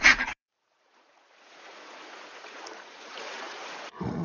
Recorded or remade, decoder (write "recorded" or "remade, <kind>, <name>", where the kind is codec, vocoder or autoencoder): remade, vocoder, Vocos